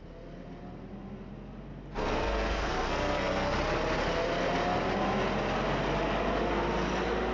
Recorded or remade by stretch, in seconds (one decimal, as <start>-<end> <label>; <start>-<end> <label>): 0.0-2.0 recorded; 2.0-3.5 remade; 3.5-7.3 recorded